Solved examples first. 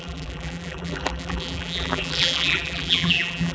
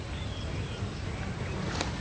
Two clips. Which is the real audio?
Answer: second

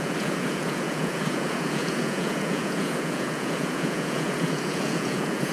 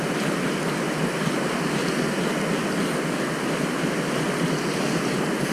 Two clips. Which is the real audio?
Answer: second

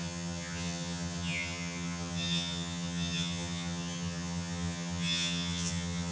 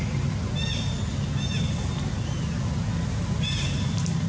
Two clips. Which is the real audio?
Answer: second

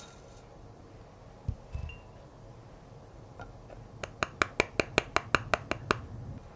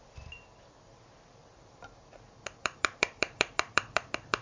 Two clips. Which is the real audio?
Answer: first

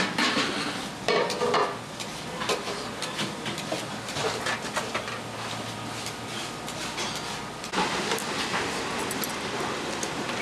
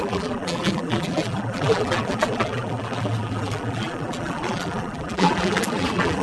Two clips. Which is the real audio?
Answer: first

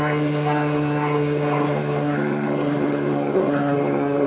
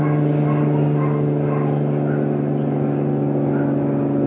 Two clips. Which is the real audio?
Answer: second